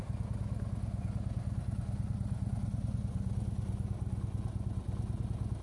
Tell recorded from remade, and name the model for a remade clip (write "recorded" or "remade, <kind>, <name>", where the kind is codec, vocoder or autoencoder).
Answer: recorded